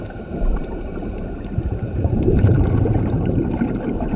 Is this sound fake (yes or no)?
yes